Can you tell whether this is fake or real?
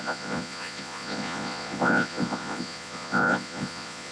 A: fake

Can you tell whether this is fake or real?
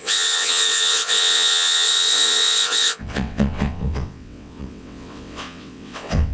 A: fake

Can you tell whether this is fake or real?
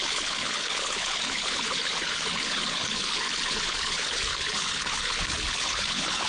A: fake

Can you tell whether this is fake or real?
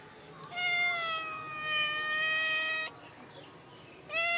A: real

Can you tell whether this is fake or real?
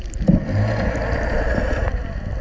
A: real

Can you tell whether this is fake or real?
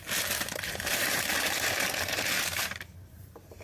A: fake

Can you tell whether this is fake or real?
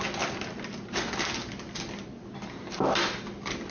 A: real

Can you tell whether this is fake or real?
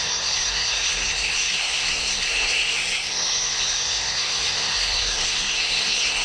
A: fake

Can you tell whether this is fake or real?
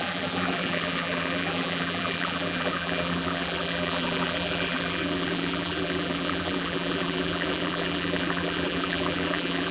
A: fake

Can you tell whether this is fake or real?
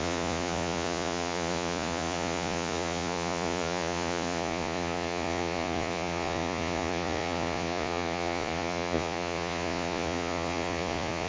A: fake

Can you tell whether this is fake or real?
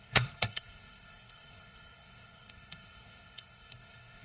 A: fake